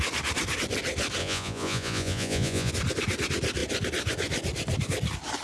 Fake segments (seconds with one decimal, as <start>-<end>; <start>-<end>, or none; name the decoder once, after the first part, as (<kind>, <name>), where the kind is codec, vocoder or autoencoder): 1.2-2.7 (vocoder, Vocos)